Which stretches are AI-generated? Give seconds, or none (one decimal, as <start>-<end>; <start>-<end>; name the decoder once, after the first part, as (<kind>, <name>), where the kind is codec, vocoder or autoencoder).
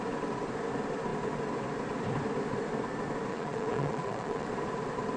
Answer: 3.3-4.5 (vocoder, Vocos)